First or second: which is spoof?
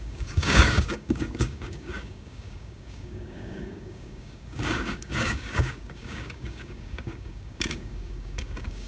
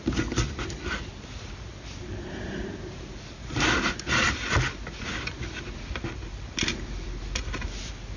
first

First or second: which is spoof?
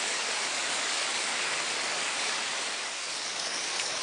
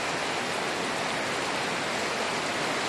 first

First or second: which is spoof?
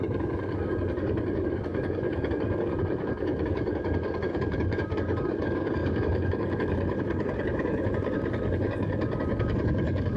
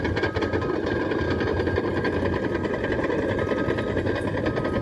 first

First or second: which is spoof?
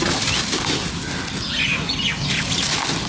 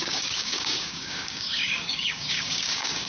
second